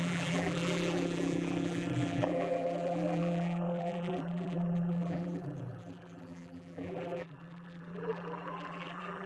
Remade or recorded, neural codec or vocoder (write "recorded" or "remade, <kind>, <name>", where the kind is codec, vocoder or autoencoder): remade, vocoder, BigVGAN v2